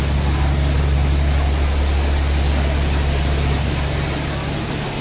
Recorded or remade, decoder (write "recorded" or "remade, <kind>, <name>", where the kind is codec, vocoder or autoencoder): recorded